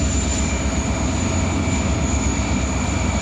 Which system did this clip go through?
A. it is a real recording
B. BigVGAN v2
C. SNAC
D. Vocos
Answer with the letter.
A